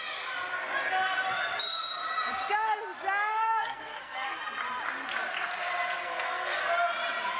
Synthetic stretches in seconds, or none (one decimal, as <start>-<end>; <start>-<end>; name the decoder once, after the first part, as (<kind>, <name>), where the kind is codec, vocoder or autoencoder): 3.3-4.4 (codec, SNAC); 6.0-6.6